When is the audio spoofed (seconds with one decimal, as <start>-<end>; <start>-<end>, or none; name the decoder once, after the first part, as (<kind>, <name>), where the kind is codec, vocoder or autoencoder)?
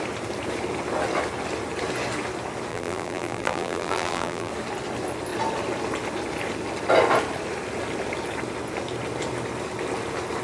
2.7-4.5 (vocoder, BigVGAN v2)